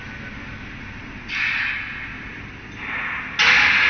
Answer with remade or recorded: recorded